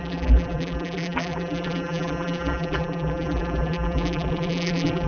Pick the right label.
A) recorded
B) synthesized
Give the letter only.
B